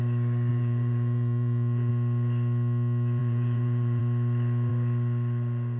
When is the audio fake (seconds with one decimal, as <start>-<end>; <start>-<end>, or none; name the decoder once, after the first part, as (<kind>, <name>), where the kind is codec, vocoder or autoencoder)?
0.5-1.9 (vocoder, Vocos); 3.2-4.0